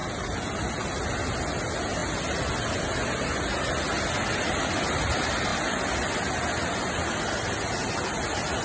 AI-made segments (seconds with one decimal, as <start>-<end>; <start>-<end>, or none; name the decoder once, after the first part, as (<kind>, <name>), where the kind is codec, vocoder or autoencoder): none